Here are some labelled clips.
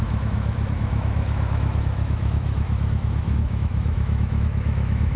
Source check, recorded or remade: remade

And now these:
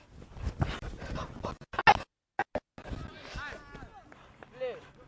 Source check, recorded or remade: recorded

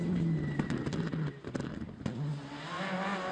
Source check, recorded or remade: recorded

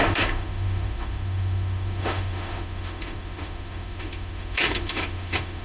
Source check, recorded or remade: remade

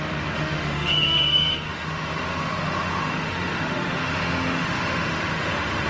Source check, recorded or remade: remade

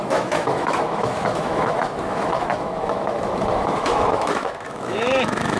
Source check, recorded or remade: remade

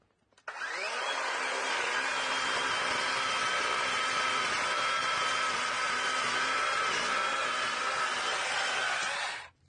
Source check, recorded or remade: recorded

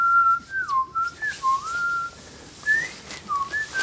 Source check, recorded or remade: recorded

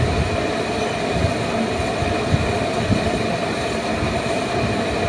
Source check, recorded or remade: recorded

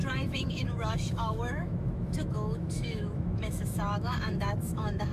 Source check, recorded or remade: remade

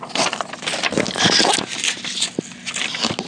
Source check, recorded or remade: recorded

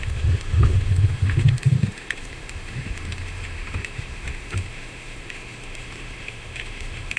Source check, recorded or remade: remade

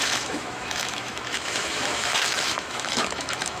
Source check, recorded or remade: remade